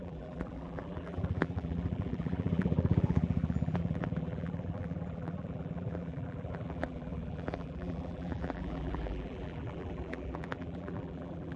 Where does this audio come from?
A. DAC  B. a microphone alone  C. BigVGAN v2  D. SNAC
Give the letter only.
C